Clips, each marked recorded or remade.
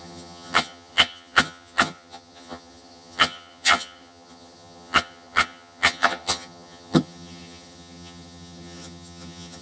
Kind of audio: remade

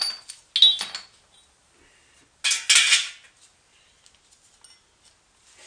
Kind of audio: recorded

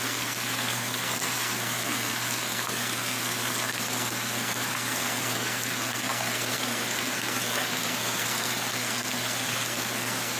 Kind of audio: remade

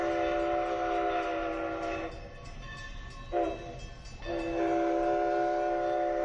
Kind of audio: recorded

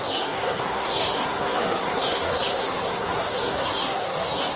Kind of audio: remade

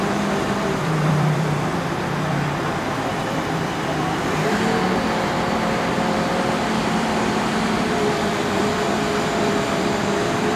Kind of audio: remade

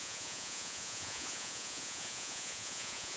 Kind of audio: remade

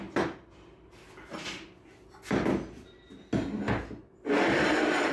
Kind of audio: recorded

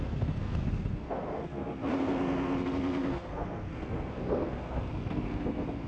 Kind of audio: remade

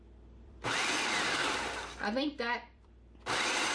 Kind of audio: remade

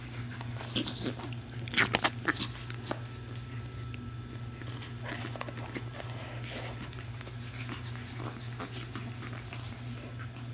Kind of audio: recorded